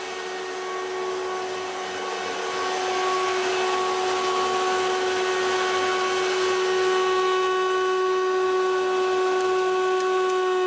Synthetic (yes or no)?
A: no